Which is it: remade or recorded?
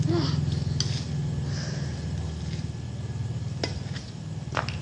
recorded